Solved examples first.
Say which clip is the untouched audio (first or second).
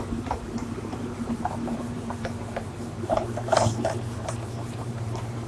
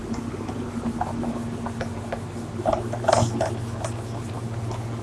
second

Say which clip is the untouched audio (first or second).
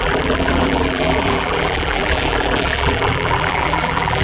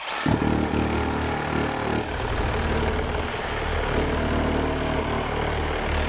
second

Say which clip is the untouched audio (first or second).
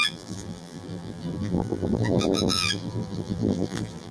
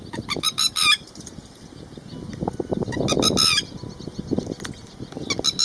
second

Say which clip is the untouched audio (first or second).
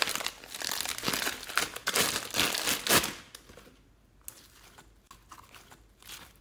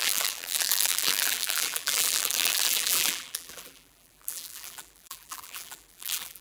first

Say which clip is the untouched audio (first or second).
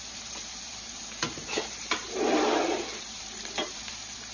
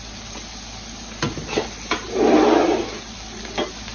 second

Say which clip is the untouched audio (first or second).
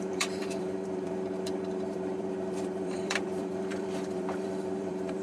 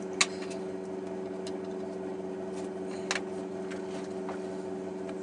second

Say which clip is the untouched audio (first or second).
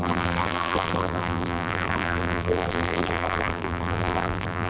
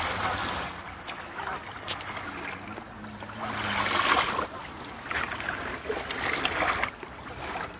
second